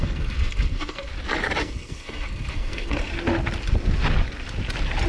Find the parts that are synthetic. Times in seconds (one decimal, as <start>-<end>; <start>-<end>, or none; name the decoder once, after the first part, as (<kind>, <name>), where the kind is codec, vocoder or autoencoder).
0.0-1.1 (codec, SNAC); 1.6-3.1